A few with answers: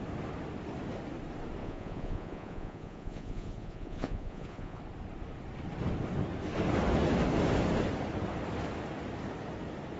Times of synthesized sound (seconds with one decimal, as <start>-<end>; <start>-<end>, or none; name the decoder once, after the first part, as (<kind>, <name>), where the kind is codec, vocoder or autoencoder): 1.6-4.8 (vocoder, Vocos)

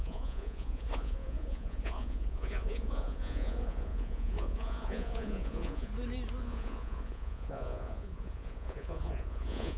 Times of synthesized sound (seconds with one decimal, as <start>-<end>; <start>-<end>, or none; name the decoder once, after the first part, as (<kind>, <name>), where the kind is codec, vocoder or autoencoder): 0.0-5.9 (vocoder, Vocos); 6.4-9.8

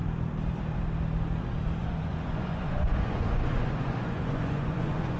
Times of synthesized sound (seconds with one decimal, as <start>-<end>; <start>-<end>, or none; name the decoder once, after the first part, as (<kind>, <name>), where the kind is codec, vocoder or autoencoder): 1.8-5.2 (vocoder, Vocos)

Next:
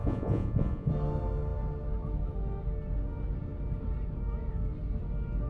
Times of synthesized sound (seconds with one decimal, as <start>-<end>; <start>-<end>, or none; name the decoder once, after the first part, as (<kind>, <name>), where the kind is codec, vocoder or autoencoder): 0.0-0.9 (vocoder, Vocos)